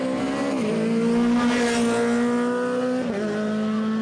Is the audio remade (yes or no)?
no